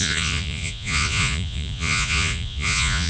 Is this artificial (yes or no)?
yes